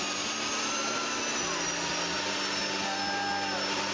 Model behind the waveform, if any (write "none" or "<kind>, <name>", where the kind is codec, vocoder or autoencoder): none